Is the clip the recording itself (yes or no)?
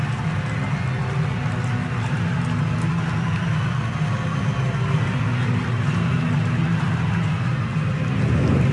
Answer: yes